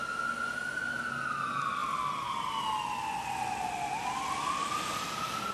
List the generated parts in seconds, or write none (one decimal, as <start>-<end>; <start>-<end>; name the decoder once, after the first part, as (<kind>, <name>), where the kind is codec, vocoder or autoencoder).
none